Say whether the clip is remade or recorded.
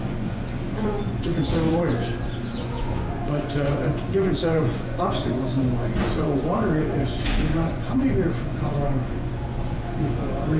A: remade